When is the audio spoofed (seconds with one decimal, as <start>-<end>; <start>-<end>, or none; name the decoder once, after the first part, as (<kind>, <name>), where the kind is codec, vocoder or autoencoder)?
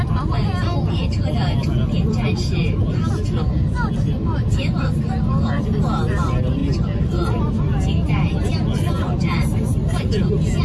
none